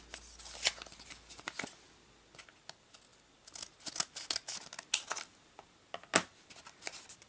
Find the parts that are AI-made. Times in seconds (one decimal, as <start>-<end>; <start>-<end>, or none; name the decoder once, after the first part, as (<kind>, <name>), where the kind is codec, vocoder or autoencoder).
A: none